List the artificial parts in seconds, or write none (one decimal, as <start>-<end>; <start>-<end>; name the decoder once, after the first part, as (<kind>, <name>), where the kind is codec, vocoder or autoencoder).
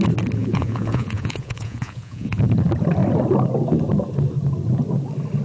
0.4-2.4 (vocoder, Vocos)